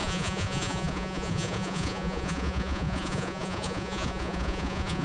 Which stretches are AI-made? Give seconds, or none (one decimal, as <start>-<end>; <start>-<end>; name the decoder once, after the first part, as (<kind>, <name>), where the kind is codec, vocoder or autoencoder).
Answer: 0.0-5.0 (vocoder, Vocos)